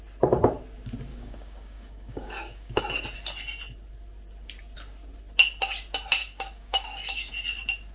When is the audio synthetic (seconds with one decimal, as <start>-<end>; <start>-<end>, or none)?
1.1-2.8; 6.2-7.3